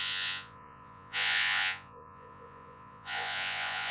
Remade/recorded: remade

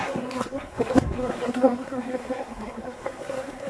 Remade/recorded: remade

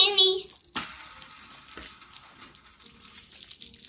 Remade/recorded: recorded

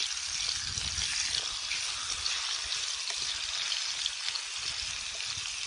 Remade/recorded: recorded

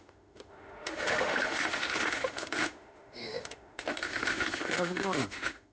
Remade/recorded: remade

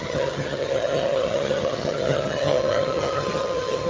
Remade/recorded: remade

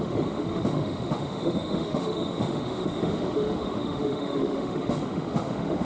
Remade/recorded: remade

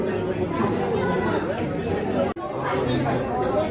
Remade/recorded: recorded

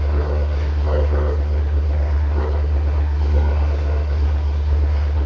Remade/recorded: remade